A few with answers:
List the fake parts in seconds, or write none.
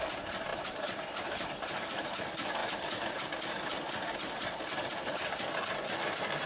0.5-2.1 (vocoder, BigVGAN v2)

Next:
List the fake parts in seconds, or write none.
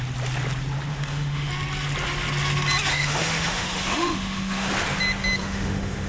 0.9-1.5 (autoencoder, DAC-VAE); 2.9-4.7; 5.4-6.1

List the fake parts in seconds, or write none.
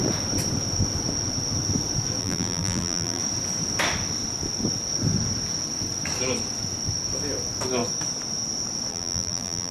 2.2-3.2 (vocoder, BigVGAN v2); 8.9-9.7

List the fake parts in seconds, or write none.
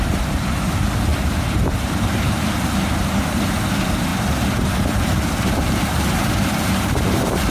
0.0-7.5 (vocoder, BigVGAN v2)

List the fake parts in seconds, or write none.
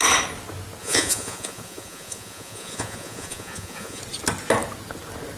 0.8-4.0 (vocoder, Vocos)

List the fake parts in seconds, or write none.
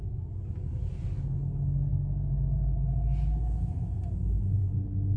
none